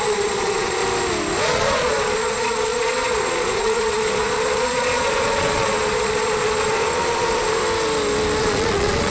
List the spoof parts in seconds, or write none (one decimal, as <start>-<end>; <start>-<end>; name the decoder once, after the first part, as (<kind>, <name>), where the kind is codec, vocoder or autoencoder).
0.0-0.8 (vocoder, Vocos); 1.4-7.6; 8.4-9.1